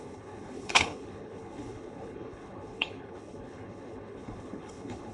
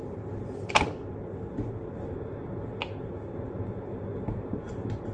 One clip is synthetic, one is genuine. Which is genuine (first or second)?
second